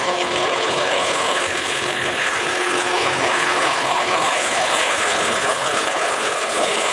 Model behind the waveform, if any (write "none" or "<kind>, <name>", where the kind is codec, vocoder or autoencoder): codec, HILCodec